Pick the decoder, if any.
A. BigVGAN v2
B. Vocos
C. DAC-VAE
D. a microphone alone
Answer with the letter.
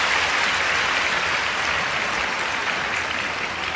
D